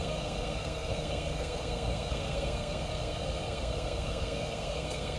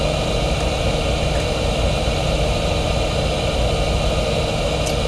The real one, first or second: second